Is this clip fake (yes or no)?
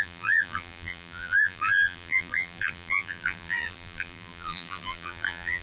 yes